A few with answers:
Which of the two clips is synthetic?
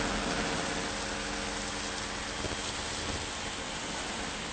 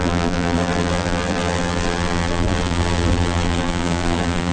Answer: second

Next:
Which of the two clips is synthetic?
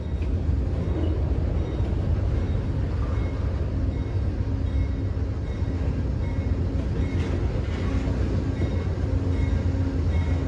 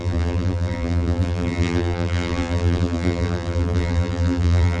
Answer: second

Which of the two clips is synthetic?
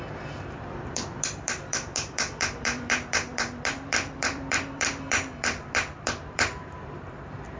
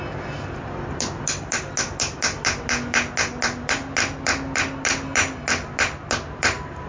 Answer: first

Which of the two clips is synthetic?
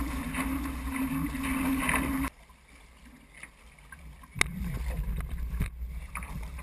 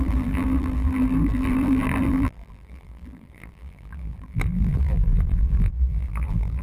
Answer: second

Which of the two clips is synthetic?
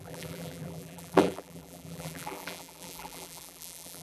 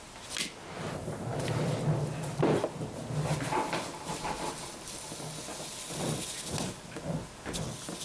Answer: first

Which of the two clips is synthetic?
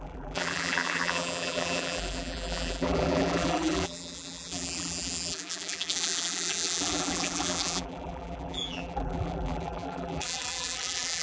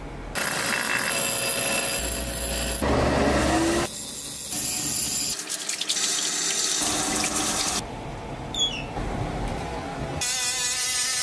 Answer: first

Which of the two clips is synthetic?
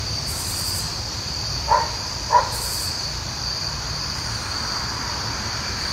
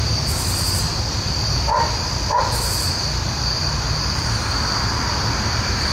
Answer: first